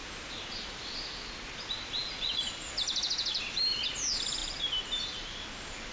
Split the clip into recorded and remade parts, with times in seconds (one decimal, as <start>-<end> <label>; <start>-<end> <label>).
0.0-5.9 recorded